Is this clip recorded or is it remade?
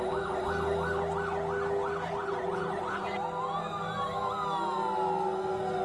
recorded